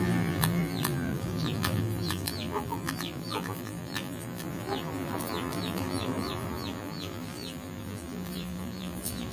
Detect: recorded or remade remade